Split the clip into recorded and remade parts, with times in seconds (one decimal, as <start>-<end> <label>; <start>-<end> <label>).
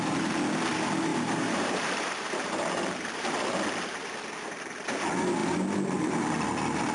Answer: 0.0-1.1 recorded; 1.1-3.3 remade; 3.3-6.9 recorded